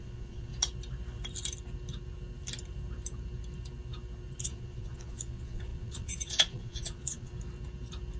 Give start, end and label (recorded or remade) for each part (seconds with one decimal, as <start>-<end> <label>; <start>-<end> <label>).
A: 0.0-0.5 remade; 0.5-4.4 recorded; 4.4-7.3 remade; 7.3-8.2 recorded